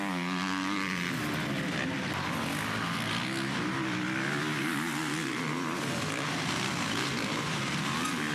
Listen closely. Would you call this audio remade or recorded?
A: recorded